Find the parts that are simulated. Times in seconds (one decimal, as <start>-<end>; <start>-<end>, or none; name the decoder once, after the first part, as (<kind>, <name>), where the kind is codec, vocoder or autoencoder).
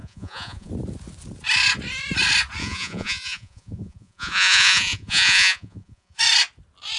0.0-0.7 (vocoder, Vocos); 2.6-6.2